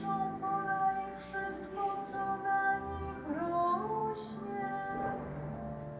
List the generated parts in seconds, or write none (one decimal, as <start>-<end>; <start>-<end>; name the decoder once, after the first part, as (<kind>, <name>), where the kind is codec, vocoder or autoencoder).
none